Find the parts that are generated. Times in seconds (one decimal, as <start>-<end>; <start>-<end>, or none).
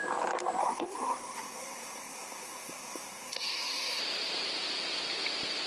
0.6-4.0